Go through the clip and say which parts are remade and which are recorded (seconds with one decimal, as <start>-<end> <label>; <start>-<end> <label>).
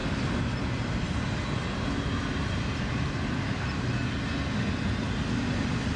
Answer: 0.0-6.0 recorded